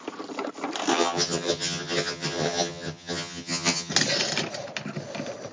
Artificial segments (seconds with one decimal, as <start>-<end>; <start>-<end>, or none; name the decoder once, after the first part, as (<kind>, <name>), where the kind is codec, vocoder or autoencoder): 0.9-3.9 (vocoder, HiFi-GAN)